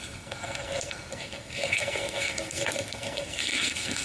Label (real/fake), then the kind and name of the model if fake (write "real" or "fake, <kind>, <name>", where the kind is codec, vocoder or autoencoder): fake, codec, SNAC